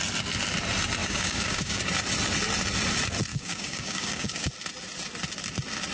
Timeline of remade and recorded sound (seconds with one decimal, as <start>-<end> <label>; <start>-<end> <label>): 0.0-1.0 recorded; 1.0-1.8 remade; 1.8-3.3 recorded; 3.3-4.5 remade; 4.5-5.9 recorded